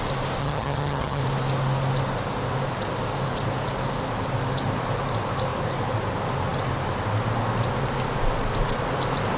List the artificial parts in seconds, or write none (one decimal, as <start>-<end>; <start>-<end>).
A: 0.4-1.2